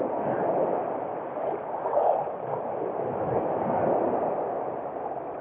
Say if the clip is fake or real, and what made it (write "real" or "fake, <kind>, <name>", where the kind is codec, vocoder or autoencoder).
real